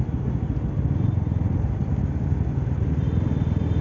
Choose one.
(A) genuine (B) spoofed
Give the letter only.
A